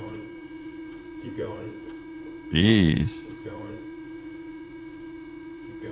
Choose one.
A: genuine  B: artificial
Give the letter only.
B